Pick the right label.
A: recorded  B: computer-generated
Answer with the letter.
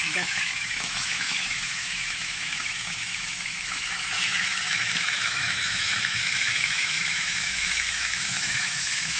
B